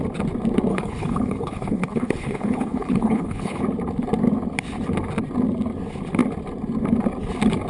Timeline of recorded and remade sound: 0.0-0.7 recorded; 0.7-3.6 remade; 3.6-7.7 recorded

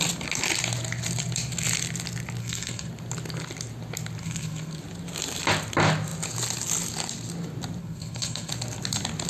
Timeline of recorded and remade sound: 0.0-2.4 recorded; 2.4-2.9 remade; 2.9-4.2 recorded; 4.2-4.8 remade; 4.8-7.8 recorded; 7.8-8.5 remade; 8.5-9.3 recorded

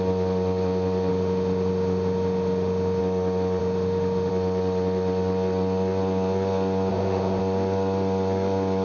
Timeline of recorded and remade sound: 0.0-1.1 recorded; 1.1-3.0 remade; 3.0-3.6 recorded; 3.6-4.3 remade; 4.3-6.9 recorded; 6.9-7.4 remade; 7.4-8.8 recorded

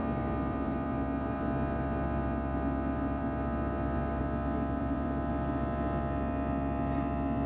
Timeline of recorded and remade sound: 0.0-4.2 remade; 4.2-4.8 recorded; 4.8-5.3 remade; 5.3-7.5 recorded

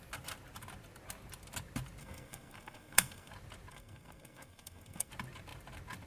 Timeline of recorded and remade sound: 0.0-2.0 recorded; 2.0-3.3 remade; 3.3-3.7 recorded; 3.7-5.1 remade; 5.1-6.1 recorded

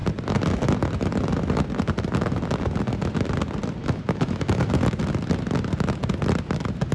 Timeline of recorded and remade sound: 0.0-3.8 recorded; 3.8-4.7 remade; 4.7-6.9 recorded

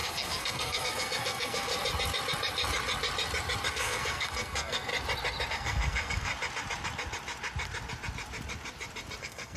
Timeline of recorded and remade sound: 0.0-1.7 remade; 1.7-3.7 recorded; 3.7-4.9 remade; 4.9-5.5 recorded; 5.5-6.3 remade; 6.3-9.2 recorded; 9.2-9.6 remade

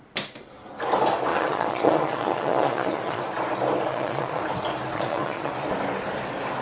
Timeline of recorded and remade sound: 0.0-1.3 recorded; 1.3-3.2 remade; 3.2-3.9 recorded; 3.9-4.4 remade; 4.4-4.9 recorded; 4.9-5.5 remade; 5.5-6.6 recorded